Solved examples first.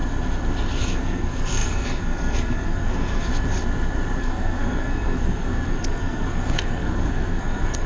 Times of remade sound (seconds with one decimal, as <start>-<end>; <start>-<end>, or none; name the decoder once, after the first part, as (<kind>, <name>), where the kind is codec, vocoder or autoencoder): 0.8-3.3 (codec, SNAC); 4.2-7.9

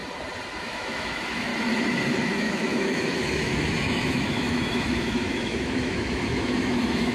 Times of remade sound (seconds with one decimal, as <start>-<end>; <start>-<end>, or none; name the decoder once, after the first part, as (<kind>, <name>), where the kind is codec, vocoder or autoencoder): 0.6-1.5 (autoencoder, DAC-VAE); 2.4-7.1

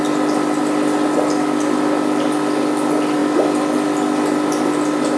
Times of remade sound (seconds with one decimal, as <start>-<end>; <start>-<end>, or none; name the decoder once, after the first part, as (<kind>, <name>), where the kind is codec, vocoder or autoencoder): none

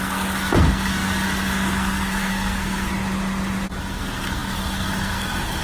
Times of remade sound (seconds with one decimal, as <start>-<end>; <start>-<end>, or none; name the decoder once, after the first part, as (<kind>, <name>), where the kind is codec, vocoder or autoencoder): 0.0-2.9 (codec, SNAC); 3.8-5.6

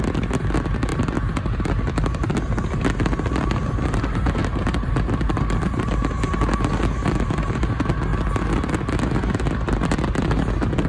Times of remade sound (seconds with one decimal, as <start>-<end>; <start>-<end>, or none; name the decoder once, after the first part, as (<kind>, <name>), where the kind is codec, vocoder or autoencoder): none

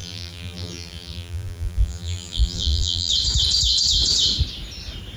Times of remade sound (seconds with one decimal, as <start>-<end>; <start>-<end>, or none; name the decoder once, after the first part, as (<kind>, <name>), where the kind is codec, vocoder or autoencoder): 0.0-3.1 (vocoder, BigVGAN v2)

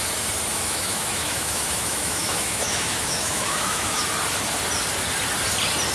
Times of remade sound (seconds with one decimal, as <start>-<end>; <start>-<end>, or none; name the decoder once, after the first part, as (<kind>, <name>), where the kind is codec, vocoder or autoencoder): 0.5-4.0 (autoencoder, DAC-VAE)